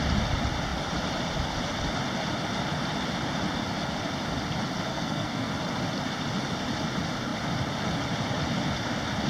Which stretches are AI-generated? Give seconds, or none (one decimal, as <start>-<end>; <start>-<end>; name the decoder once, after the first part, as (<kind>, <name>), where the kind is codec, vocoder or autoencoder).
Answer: 4.9-5.5 (codec, SNAC)